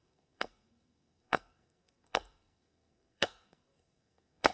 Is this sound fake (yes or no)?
yes